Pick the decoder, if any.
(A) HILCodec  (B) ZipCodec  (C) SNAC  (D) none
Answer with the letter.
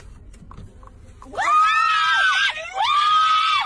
D